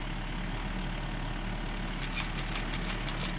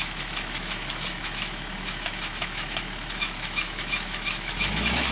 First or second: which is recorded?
first